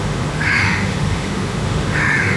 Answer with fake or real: fake